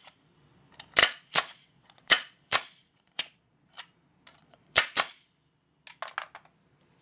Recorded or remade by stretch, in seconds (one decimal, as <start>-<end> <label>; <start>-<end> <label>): 0.0-1.0 recorded; 1.0-3.7 remade; 3.7-4.4 recorded; 4.4-5.1 remade; 5.1-7.0 recorded